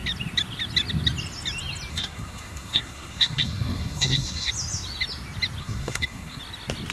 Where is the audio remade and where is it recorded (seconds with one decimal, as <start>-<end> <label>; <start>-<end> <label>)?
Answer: 0.0-1.9 recorded; 1.9-4.5 remade; 4.5-5.6 recorded; 5.6-6.4 remade; 6.4-6.9 recorded